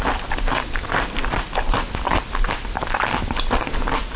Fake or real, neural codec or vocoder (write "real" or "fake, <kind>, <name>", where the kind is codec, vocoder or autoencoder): real